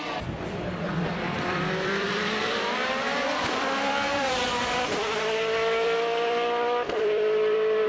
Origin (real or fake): fake